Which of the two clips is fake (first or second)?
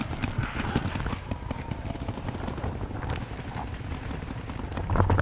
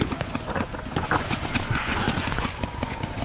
second